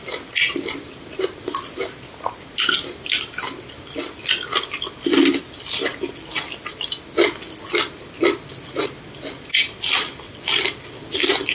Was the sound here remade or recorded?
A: recorded